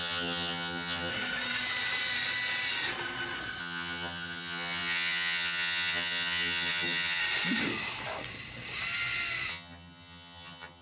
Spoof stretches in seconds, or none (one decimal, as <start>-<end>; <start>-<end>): 0.0-1.1; 3.6-7.2; 9.5-10.8